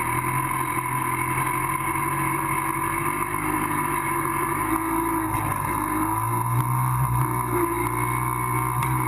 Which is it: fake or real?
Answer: real